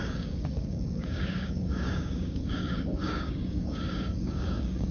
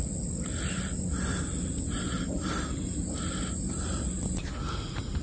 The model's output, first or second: first